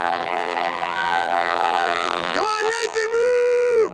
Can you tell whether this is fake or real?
fake